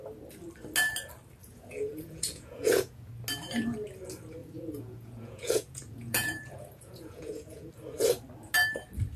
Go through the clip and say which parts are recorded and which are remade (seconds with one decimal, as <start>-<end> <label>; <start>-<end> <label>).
0.0-1.4 recorded; 1.4-3.1 remade; 3.1-4.4 recorded; 4.4-7.7 remade; 7.7-9.2 recorded